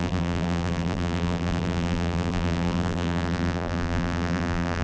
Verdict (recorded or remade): remade